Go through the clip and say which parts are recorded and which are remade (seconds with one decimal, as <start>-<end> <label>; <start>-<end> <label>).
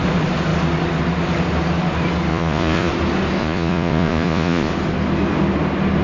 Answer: 0.0-2.3 recorded; 2.3-2.9 remade; 2.9-3.4 recorded; 3.4-4.7 remade; 4.7-6.0 recorded